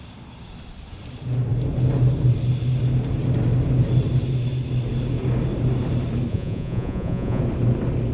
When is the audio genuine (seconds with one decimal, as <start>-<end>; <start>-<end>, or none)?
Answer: 0.0-6.3; 7.4-8.1